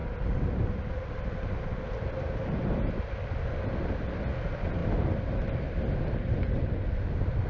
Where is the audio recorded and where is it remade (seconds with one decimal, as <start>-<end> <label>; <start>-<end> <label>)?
0.0-7.5 recorded